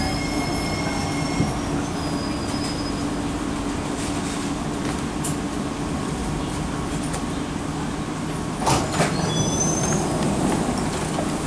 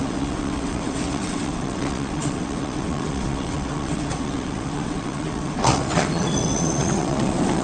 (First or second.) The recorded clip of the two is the first